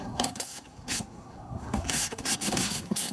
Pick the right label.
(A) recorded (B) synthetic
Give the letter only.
B